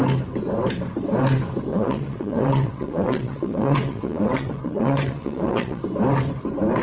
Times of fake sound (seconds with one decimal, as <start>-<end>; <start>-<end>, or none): 1.7-5.8

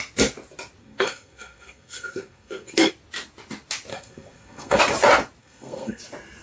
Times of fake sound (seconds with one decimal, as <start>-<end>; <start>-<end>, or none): 0.8-2.9; 3.9-4.8; 5.4-6.0

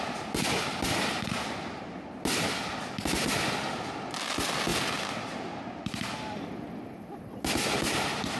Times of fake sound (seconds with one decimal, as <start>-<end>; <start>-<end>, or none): none

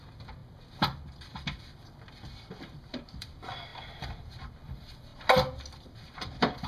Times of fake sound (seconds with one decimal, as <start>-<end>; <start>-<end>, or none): 0.0-5.1; 5.7-6.7

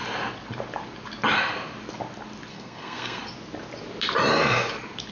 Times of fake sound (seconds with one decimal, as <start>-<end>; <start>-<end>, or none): 2.5-3.2

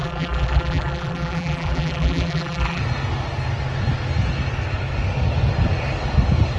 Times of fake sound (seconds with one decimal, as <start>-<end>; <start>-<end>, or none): 0.0-2.8

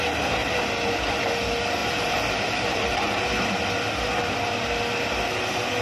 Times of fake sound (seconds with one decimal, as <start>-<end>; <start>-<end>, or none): 1.8-3.0

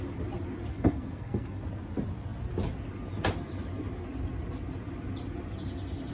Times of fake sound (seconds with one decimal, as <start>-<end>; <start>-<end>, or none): 0.7-1.6